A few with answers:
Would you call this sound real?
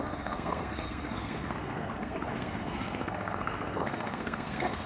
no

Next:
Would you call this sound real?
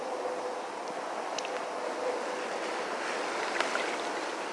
yes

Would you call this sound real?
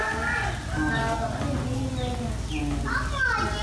yes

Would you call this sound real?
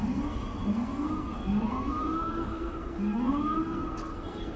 no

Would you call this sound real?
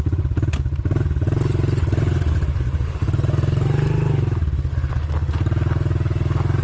yes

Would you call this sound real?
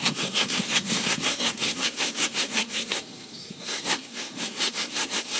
no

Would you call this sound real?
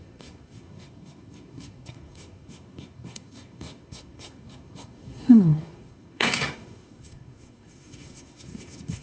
no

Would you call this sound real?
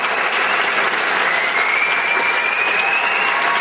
yes